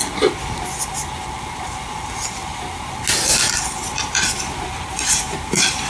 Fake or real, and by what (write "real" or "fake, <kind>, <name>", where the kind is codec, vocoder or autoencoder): real